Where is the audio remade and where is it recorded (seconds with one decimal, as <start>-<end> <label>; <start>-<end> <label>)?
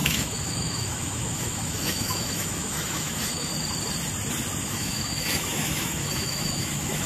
0.0-3.5 remade; 3.5-4.6 recorded; 4.6-7.1 remade